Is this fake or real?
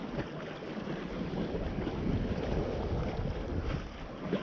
real